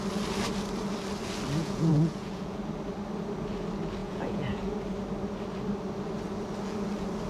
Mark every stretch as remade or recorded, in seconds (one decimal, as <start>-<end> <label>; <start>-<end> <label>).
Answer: 0.0-1.6 recorded; 1.6-2.6 remade; 2.6-4.0 recorded; 4.0-4.6 remade; 4.6-7.3 recorded